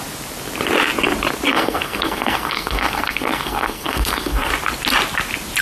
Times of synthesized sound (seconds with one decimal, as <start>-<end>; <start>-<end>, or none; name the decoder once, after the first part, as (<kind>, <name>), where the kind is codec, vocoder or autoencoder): 1.5-4.5 (codec, SNAC)